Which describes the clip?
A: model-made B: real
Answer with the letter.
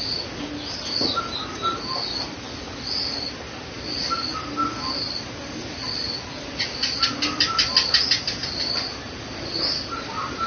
B